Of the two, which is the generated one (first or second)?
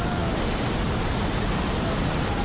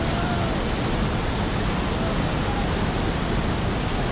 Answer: first